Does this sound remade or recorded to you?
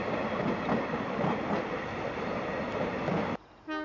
recorded